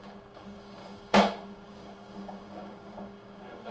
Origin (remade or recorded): remade